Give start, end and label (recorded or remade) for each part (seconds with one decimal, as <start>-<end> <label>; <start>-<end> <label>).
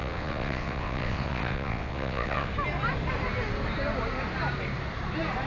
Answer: 0.0-2.5 remade; 2.5-5.5 recorded